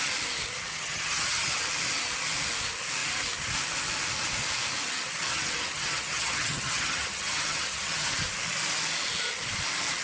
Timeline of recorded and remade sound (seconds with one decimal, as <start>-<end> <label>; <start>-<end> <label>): 0.0-0.7 recorded; 0.7-1.4 remade; 1.4-5.3 recorded; 5.3-8.1 remade; 8.1-10.0 recorded